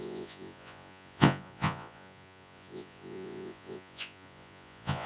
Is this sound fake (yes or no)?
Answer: yes